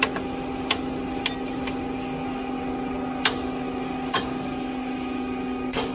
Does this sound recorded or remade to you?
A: recorded